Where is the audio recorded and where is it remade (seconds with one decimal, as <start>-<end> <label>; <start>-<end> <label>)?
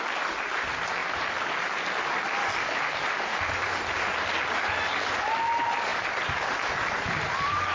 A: 0.0-7.7 recorded